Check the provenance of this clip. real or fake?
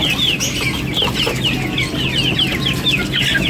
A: real